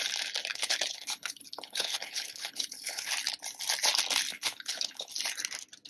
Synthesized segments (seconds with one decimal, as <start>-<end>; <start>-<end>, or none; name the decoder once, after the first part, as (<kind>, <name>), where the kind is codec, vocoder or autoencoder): 0.5-3.1 (codec, HILCodec); 4.3-5.1